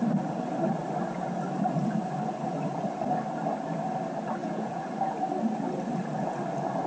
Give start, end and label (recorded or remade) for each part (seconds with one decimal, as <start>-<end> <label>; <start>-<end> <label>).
0.0-4.4 recorded; 4.4-4.9 remade; 4.9-6.9 recorded